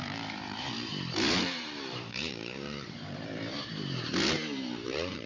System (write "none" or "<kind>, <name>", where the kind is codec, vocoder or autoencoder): vocoder, BigVGAN v2